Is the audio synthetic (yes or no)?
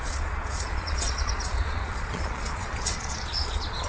yes